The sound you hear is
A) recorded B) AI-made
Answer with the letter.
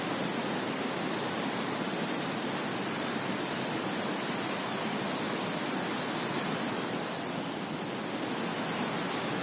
A